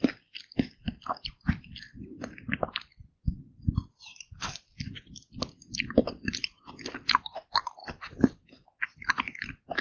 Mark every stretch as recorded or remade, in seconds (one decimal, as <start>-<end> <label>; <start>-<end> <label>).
0.0-9.8 recorded